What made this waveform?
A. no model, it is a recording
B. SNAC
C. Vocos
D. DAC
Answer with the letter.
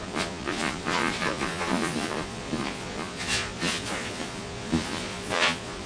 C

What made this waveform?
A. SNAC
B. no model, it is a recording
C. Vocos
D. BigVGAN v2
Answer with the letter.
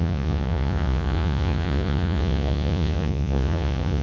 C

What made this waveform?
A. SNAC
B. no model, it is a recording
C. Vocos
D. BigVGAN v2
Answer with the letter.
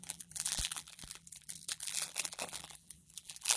D